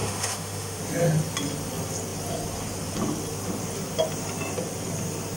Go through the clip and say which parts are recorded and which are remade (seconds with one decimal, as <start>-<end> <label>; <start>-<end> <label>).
0.0-0.8 remade; 0.8-5.4 recorded